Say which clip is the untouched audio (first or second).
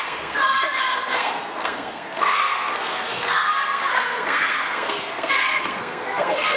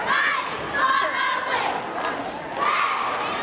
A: second